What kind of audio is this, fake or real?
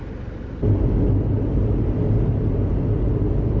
real